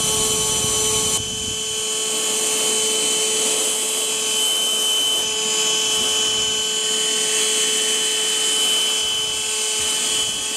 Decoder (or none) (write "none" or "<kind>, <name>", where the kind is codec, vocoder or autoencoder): none